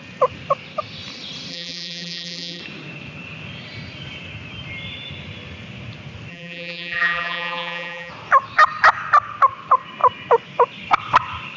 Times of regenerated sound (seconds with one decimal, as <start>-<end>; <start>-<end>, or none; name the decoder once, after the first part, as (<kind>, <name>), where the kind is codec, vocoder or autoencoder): 1.5-2.6 (vocoder, BigVGAN v2); 6.3-8.1